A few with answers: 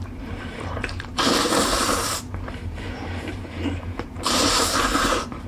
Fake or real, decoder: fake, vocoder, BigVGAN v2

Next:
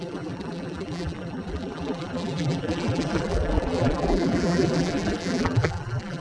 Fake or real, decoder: fake, vocoder, BigVGAN v2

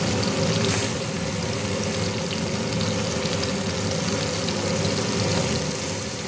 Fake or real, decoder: real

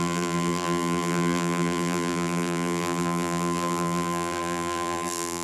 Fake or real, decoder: fake, vocoder, BigVGAN v2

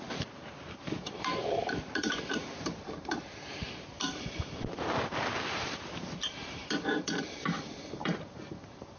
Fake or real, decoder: fake, vocoder, BigVGAN v2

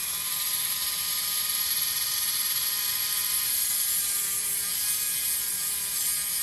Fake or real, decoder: fake, vocoder, BigVGAN v2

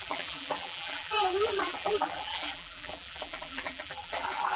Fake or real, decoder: fake, vocoder, BigVGAN v2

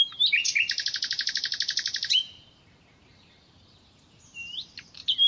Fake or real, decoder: fake, vocoder, BigVGAN v2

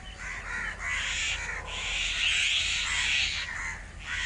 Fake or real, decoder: real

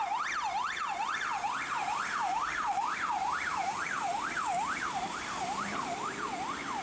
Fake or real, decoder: fake, vocoder, BigVGAN v2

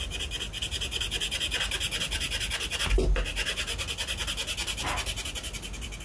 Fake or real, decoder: real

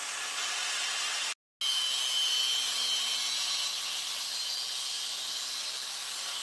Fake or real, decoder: real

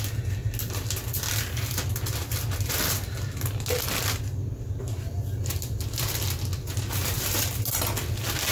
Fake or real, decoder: real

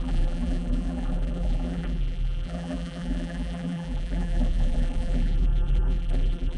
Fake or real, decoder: fake, vocoder, BigVGAN v2